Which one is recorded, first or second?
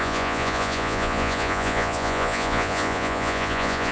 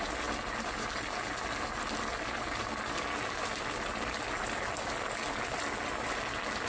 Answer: second